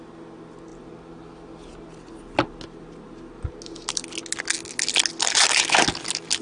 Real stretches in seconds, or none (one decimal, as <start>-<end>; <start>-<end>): 0.0-6.4